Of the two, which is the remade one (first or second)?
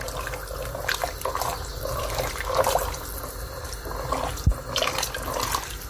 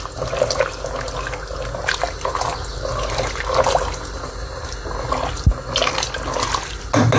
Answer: first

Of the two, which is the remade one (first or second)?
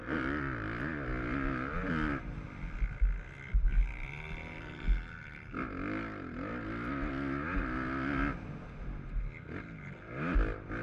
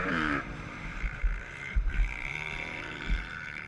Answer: second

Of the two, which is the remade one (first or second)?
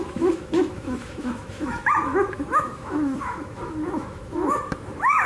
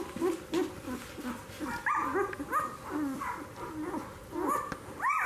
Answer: first